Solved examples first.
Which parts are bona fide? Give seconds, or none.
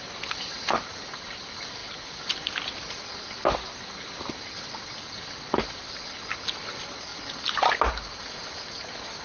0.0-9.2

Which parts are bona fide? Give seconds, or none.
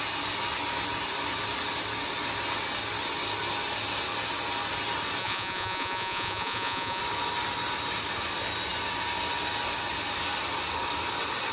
0.0-5.2; 7.0-11.5